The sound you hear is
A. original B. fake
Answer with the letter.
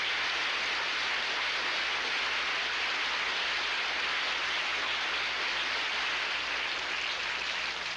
A